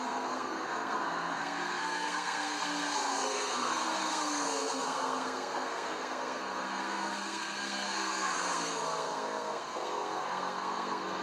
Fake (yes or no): yes